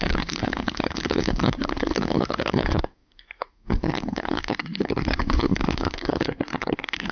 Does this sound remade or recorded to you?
remade